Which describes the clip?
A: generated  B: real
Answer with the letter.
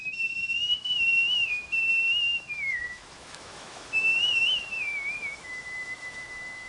A